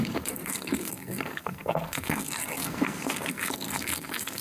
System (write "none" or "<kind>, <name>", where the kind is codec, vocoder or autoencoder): codec, SNAC